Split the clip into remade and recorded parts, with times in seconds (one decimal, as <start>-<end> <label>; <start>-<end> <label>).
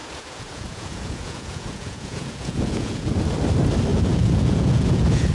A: 0.0-3.1 remade; 3.1-3.9 recorded; 3.9-5.3 remade